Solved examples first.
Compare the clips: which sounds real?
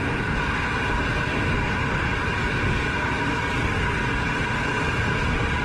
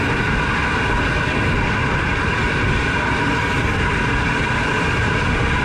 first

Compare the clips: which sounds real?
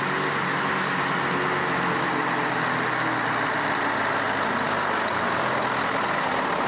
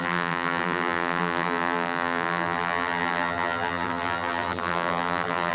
first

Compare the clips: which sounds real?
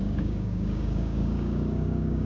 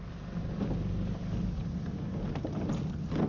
second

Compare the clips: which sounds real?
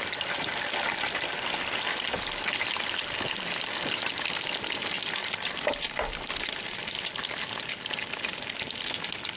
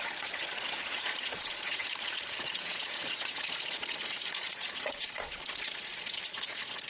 first